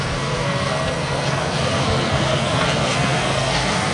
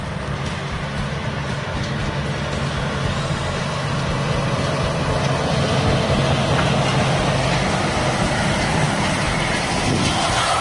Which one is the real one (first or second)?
second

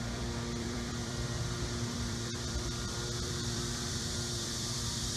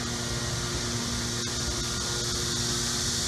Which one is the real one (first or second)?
second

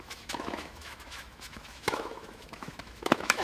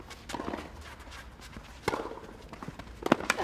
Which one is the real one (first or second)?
second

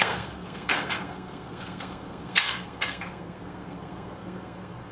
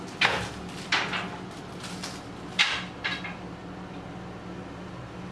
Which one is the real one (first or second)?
second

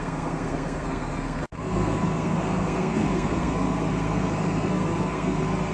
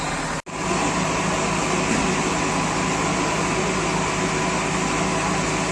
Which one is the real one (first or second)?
second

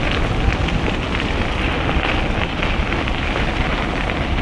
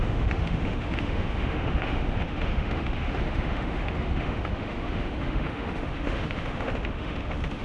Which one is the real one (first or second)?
first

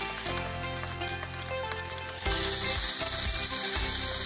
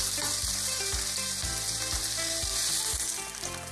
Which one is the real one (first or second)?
first